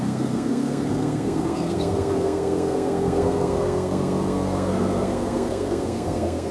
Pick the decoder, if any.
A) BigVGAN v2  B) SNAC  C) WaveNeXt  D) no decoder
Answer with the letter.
B